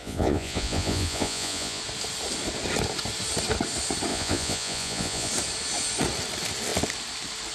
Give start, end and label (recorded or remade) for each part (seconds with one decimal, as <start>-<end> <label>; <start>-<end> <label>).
0.0-1.8 remade; 1.8-4.1 recorded; 4.1-5.3 remade; 5.3-7.5 recorded